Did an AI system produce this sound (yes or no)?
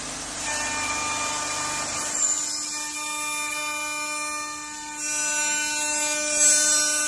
no